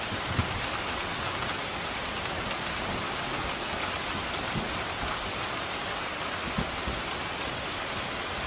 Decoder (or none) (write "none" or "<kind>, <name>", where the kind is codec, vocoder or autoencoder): none